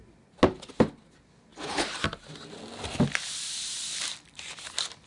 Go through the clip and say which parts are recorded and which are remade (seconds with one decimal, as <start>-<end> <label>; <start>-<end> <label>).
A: 0.0-5.1 recorded